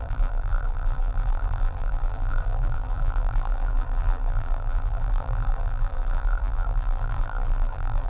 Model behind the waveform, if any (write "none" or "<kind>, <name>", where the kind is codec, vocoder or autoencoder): vocoder, BigVGAN v2